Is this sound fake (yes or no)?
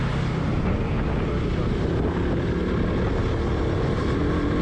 no